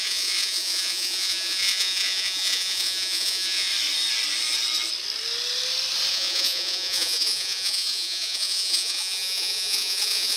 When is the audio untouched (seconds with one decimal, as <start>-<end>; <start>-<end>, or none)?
3.7-6.1